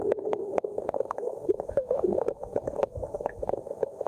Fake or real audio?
fake